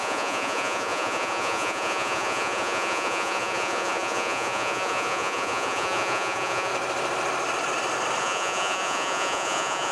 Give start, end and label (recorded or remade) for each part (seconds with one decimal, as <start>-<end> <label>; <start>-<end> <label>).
0.0-6.7 remade; 6.7-8.2 recorded; 8.2-9.9 remade